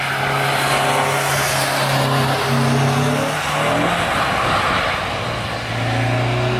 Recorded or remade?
recorded